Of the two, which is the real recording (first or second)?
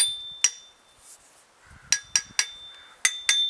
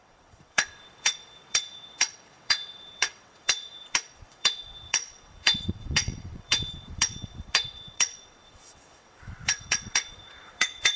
first